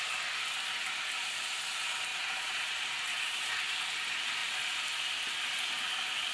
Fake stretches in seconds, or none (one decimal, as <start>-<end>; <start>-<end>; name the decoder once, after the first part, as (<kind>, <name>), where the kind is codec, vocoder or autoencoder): 2.1-2.7 (vocoder, Vocos); 3.1-3.6